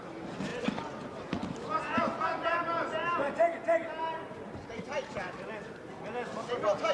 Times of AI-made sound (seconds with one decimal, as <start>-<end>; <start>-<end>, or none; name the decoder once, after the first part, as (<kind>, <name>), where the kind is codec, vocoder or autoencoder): 3.0-5.5 (vocoder, BigVGAN v2)